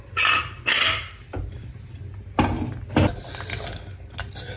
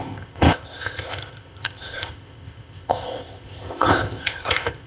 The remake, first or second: second